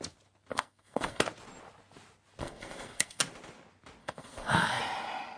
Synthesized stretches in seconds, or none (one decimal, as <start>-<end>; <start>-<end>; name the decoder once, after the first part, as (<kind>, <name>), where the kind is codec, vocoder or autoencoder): 0.5-1.2 (codec, SNAC); 2.4-3.2; 4.0-4.8